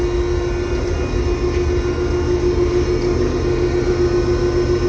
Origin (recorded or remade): recorded